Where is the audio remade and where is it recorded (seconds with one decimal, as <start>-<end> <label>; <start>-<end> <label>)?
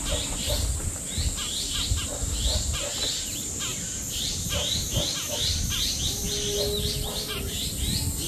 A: 0.0-3.7 recorded; 3.7-6.3 remade; 6.3-8.3 recorded